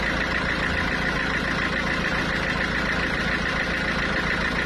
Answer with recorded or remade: recorded